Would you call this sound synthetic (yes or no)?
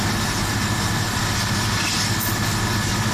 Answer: no